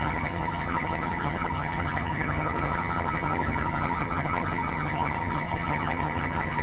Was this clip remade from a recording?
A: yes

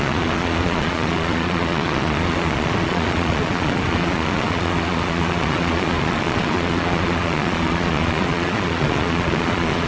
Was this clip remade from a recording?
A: yes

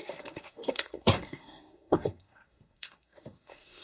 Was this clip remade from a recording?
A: yes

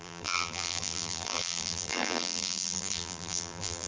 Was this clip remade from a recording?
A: yes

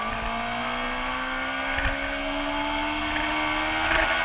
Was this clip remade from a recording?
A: no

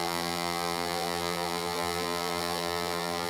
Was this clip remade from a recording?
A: yes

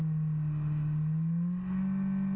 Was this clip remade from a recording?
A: no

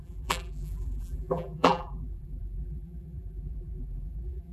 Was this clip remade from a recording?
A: yes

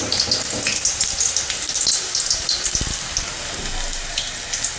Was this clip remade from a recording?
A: no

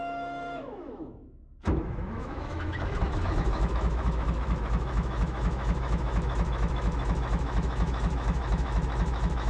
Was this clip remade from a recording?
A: yes